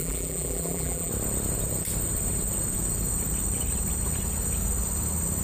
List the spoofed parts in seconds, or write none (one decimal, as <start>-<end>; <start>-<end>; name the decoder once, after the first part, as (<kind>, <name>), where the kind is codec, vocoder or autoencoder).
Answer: 0.0-1.1 (vocoder, BigVGAN v2)